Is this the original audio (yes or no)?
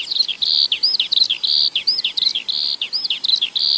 no